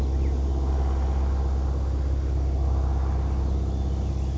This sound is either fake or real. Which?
real